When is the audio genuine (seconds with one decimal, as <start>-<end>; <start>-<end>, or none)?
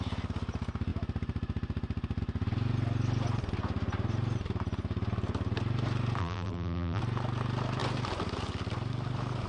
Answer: 0.0-6.2; 7.0-9.5